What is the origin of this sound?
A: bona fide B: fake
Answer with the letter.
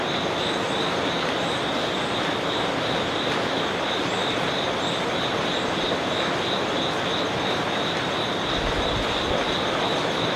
A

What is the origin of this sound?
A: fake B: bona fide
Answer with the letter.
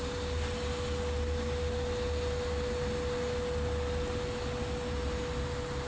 B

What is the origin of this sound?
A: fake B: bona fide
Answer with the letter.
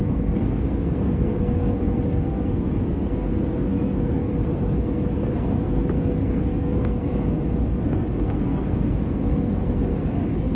A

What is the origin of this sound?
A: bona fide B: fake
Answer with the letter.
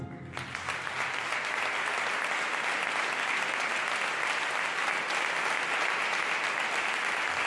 A